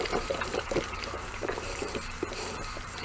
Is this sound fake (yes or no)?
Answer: yes